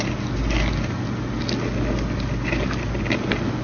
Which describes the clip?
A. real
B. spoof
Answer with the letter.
A